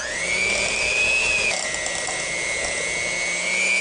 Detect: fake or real real